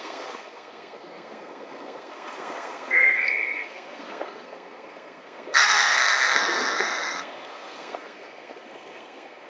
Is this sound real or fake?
fake